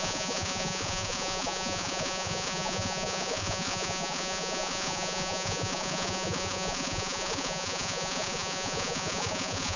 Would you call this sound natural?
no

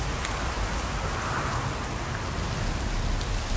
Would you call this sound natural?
yes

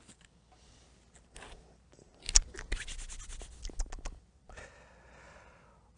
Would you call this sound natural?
yes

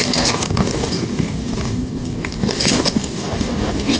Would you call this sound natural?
no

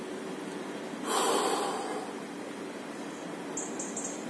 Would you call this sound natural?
yes